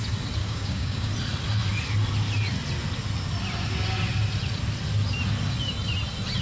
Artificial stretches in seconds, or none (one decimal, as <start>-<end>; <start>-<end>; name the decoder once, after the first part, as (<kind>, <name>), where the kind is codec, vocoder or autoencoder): 0.4-1.1 (codec, DAC)